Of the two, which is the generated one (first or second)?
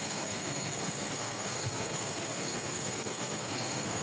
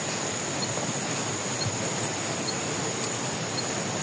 first